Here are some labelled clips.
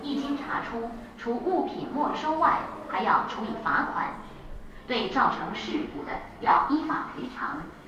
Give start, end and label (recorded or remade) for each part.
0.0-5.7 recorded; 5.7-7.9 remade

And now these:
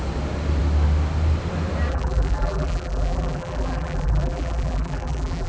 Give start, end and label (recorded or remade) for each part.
0.0-1.9 recorded; 1.9-5.5 remade

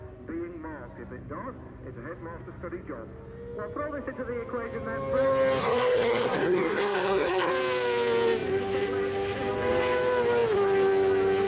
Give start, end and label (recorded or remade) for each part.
0.0-5.6 recorded; 5.6-7.5 remade; 7.5-11.5 recorded

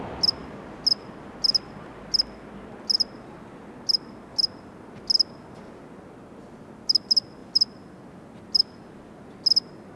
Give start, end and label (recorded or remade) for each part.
0.0-10.0 recorded